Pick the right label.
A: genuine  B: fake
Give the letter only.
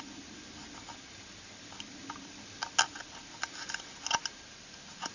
A